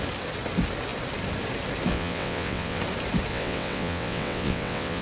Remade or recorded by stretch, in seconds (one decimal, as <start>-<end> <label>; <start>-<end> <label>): 0.0-1.9 recorded; 1.9-2.8 remade; 2.8-3.3 recorded; 3.3-5.0 remade